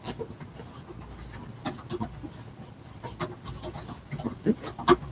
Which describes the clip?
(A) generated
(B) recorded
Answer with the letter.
B